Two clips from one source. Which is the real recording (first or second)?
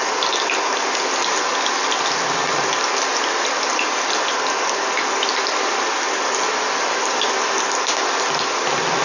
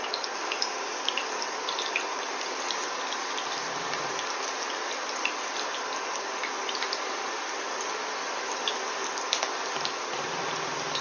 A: first